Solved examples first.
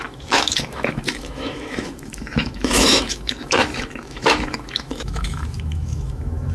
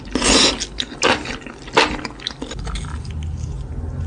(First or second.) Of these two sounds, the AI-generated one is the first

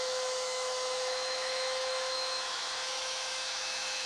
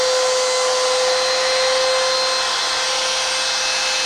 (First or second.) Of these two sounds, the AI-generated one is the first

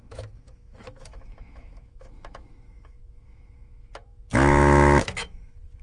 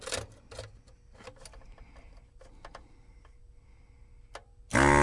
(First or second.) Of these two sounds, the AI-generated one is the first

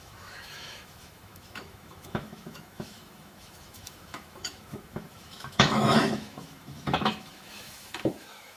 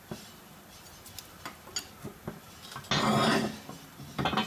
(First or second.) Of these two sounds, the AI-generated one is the first